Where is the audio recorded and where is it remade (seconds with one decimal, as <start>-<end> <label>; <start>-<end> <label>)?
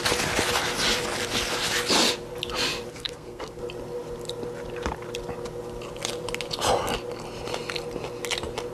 0.0-2.9 recorded; 2.9-3.6 remade; 3.6-8.7 recorded